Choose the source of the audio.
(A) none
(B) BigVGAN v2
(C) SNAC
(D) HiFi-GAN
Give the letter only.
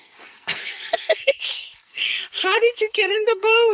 C